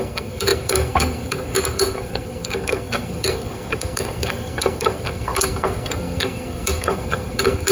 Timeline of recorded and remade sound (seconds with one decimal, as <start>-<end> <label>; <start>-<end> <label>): 0.0-7.7 remade